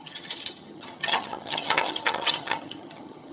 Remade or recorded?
remade